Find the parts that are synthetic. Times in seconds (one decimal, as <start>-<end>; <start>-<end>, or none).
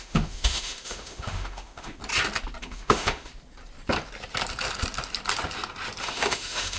0.0-2.0; 2.6-3.3; 6.0-6.8